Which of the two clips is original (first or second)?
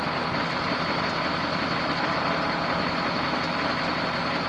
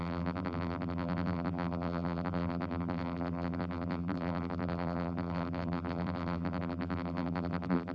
first